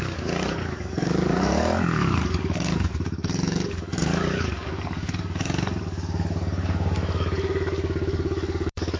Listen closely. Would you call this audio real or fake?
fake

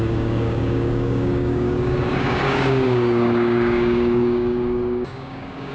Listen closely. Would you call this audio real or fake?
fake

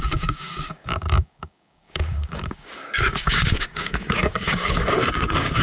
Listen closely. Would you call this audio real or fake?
fake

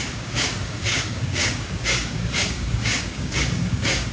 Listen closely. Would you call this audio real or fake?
fake